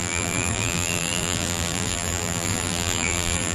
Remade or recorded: remade